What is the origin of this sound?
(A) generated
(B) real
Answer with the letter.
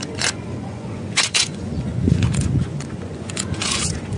A